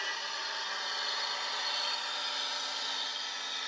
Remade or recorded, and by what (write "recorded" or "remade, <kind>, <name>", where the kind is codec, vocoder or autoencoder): recorded